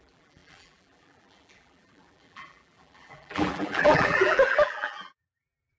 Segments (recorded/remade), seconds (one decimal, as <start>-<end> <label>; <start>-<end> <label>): 0.0-5.8 remade